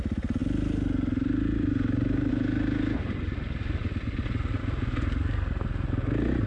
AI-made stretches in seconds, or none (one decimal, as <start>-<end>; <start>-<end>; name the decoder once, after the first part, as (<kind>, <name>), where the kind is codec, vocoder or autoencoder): none